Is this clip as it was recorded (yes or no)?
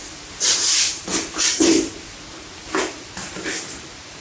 yes